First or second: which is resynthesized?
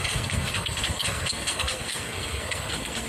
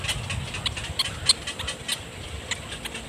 first